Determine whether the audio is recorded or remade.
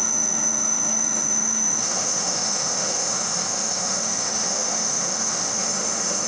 remade